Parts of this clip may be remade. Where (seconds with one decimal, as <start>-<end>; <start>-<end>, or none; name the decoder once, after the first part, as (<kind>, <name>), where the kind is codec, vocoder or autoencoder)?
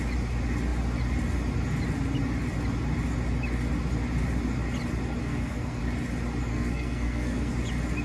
5.2-5.8 (codec, SNAC); 6.5-7.5